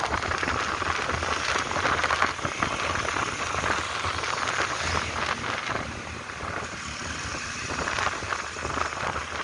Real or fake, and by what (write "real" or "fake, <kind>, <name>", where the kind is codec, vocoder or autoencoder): real